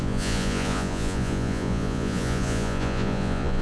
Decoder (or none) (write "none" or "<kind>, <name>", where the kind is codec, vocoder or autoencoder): vocoder, Vocos